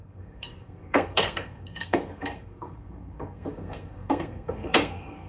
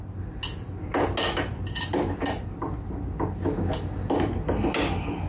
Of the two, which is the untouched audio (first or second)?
second